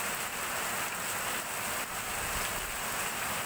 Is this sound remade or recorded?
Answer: recorded